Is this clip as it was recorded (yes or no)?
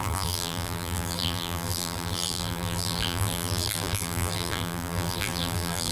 no